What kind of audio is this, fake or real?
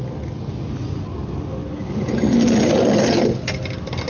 real